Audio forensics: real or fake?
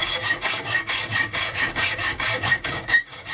fake